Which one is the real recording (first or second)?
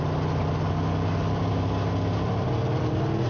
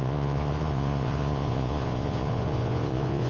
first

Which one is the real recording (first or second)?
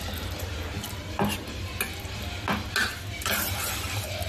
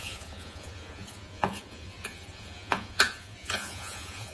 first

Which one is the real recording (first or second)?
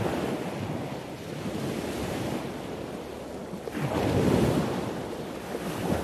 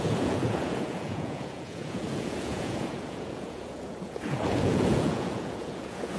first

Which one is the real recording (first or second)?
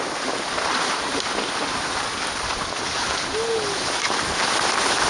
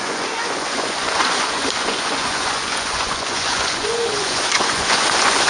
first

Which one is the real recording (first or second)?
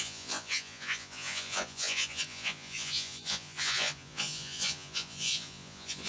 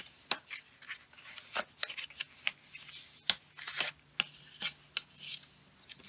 second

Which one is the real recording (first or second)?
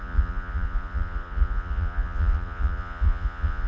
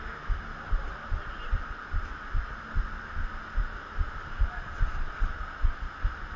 second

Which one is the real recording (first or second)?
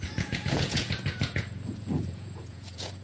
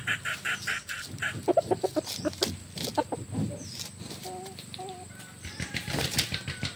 second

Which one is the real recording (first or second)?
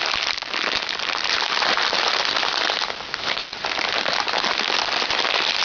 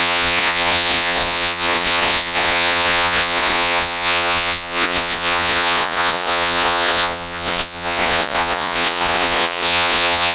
first